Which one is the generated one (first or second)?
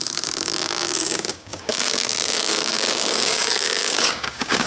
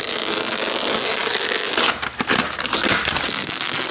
first